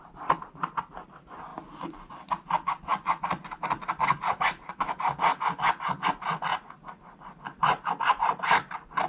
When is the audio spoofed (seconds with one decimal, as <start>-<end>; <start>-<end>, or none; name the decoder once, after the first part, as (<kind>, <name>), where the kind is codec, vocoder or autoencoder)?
2.9-5.7 (vocoder, BigVGAN v2); 6.5-9.1